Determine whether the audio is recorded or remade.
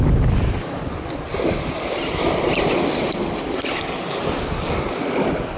recorded